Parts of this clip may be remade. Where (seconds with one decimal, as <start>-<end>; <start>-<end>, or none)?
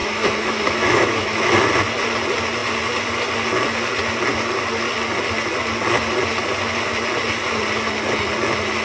0.0-1.6